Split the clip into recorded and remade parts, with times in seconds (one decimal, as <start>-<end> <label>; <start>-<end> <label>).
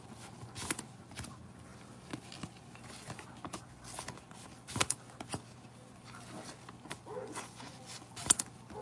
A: 0.0-7.2 recorded; 7.2-7.8 remade; 7.8-8.8 recorded